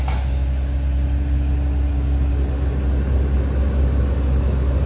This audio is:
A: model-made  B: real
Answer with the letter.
B